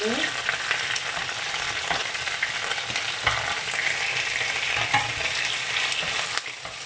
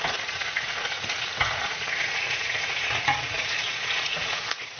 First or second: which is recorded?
first